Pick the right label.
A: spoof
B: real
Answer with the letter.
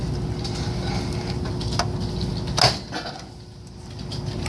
B